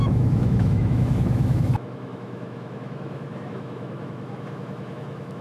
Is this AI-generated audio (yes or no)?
yes